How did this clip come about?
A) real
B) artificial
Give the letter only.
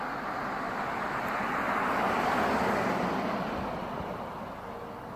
A